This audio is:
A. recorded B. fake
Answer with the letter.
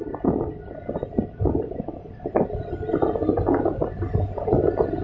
A